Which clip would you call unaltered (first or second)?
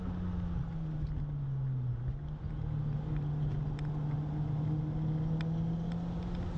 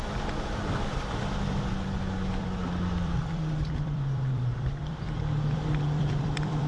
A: first